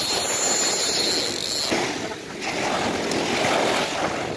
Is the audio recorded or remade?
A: recorded